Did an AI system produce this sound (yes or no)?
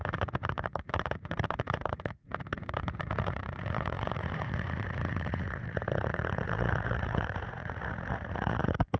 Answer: yes